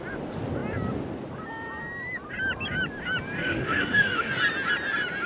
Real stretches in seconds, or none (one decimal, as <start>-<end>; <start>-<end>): 0.0-3.4; 4.3-5.3